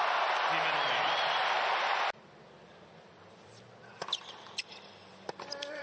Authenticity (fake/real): real